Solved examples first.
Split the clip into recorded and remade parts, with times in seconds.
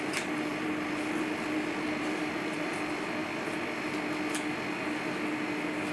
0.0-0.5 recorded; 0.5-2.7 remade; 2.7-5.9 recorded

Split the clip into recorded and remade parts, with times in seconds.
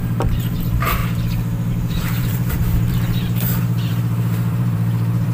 0.0-1.0 remade; 1.0-1.7 recorded; 1.7-5.3 remade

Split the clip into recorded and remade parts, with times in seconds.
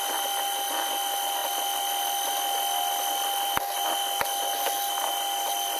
0.0-5.8 recorded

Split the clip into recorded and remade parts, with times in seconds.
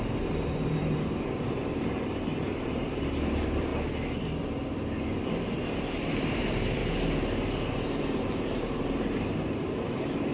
0.0-3.7 remade; 3.7-5.2 recorded; 5.2-6.8 remade; 6.8-7.7 recorded; 7.7-10.3 remade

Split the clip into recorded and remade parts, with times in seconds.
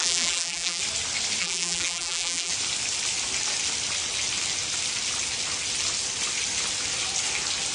0.0-0.8 remade; 0.8-1.4 recorded; 1.4-2.5 remade; 2.5-7.7 recorded